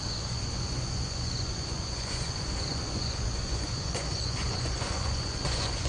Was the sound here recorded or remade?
remade